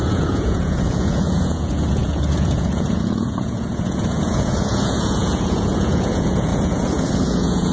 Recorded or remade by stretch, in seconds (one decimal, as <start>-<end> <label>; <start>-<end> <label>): 0.0-7.7 remade